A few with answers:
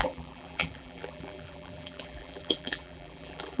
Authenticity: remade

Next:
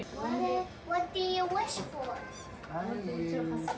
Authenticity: recorded